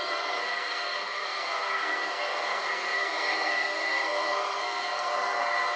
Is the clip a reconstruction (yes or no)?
yes